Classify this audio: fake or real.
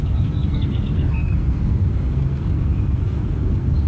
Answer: fake